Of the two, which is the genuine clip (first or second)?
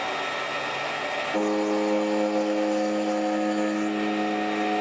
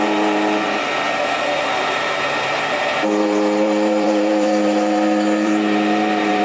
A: first